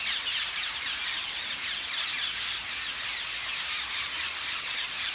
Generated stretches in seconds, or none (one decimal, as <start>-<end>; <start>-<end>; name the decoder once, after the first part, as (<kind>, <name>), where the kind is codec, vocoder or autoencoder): none